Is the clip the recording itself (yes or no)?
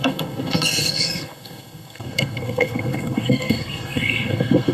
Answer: no